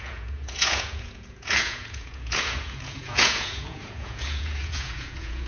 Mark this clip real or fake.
fake